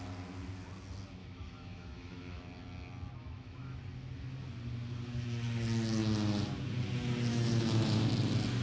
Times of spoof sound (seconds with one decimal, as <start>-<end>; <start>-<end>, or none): 1.2-2.4; 3.2-3.8; 7.3-8.0